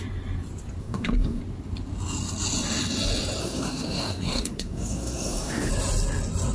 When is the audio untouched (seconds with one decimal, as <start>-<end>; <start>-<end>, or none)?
0.0-0.8; 1.4-3.4; 5.7-6.5